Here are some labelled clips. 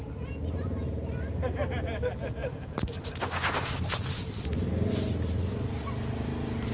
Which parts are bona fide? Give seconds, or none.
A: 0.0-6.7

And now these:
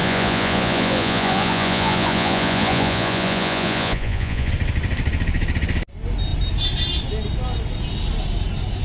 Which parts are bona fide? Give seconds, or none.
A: 4.5-8.8

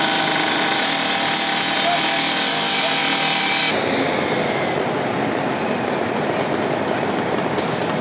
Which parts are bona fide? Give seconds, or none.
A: 0.0-8.0

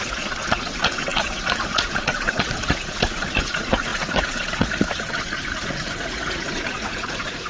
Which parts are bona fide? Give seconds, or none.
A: none

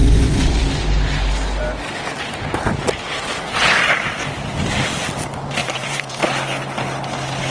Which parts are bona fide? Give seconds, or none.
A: 0.6-5.6; 6.2-7.5

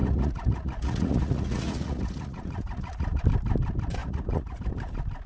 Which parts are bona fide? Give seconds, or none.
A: 3.2-4.0; 4.6-5.3

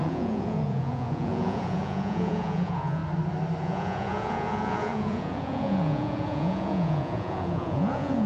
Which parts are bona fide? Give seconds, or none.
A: 3.0-3.6